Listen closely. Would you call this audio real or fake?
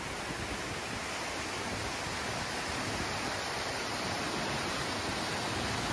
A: real